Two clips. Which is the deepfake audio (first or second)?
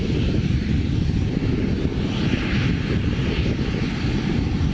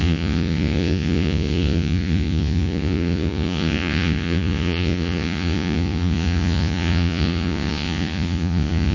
second